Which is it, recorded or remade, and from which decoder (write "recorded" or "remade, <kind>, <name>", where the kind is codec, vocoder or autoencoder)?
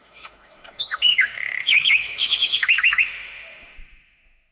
remade, autoencoder, DAC-VAE